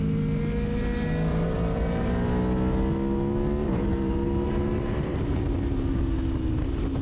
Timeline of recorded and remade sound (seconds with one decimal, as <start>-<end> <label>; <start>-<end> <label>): 0.0-1.3 recorded; 1.3-2.1 remade; 2.1-3.6 recorded; 3.6-6.0 remade; 6.0-7.0 recorded